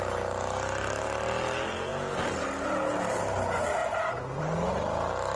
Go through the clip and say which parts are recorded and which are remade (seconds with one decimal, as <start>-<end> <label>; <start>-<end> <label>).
0.0-5.4 recorded